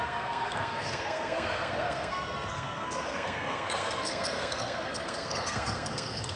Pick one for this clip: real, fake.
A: fake